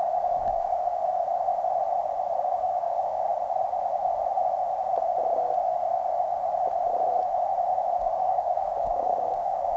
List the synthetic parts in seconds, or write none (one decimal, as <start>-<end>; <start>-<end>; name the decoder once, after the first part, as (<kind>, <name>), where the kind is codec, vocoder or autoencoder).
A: 0.0-1.0 (codec, DAC); 2.4-3.3; 8.0-9.8